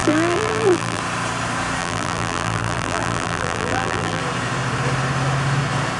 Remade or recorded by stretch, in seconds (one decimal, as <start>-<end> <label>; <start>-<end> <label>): 0.0-1.0 remade; 1.0-1.8 recorded; 1.8-4.2 remade; 4.2-6.0 recorded